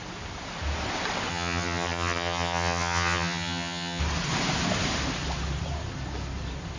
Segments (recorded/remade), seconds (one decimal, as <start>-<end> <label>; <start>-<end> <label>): 0.0-1.3 recorded; 1.3-4.0 remade; 4.0-6.8 recorded